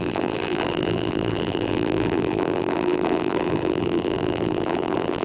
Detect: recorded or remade remade